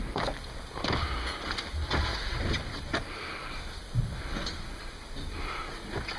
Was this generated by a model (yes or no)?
no